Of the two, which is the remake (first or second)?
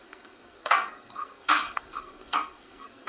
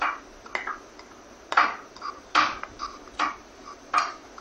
first